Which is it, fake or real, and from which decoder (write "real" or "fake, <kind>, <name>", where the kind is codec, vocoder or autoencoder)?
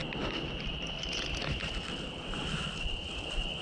real